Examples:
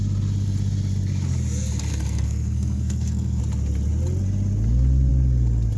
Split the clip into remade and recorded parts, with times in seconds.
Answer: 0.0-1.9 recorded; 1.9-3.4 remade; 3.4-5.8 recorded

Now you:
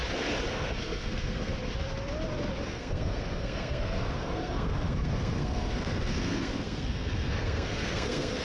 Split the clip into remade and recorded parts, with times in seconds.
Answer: 0.0-0.5 recorded; 0.5-1.5 remade; 1.5-2.6 recorded; 2.6-8.4 remade

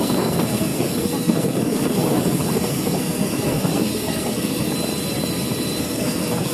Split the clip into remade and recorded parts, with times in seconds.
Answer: 0.0-4.7 remade; 4.7-5.8 recorded; 5.8-6.5 remade

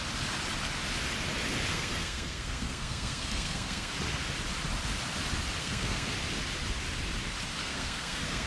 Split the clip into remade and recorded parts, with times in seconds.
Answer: 0.0-1.7 recorded; 1.7-3.9 remade; 3.9-5.6 recorded; 5.6-6.1 remade; 6.1-7.6 recorded; 7.6-8.5 remade